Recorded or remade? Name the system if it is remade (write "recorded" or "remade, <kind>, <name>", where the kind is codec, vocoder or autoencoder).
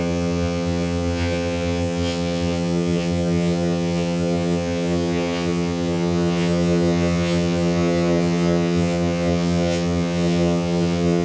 remade, vocoder, HiFi-GAN